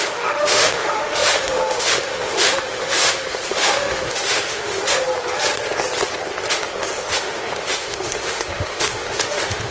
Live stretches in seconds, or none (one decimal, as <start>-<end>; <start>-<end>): 5.0-6.5